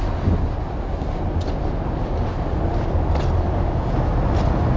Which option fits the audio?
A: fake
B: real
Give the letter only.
B